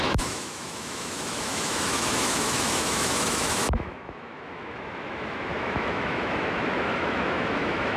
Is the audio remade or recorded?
remade